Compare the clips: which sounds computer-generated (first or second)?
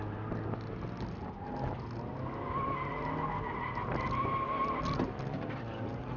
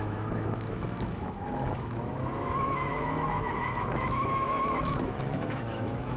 second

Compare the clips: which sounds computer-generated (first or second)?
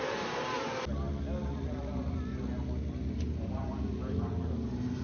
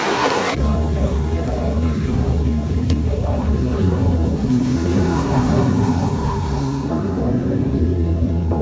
second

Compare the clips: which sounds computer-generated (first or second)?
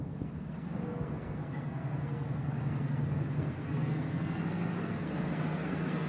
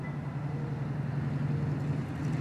first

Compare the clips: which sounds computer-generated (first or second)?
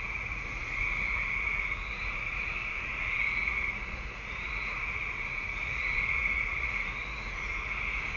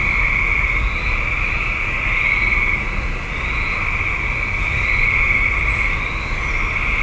first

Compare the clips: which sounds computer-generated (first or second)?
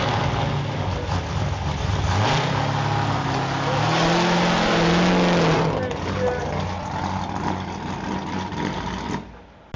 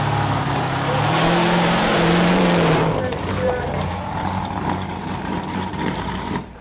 second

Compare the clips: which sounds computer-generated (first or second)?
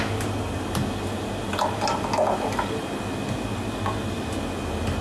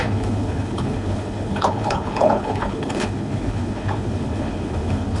second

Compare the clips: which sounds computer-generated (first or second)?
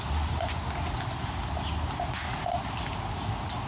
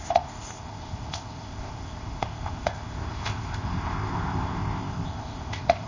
second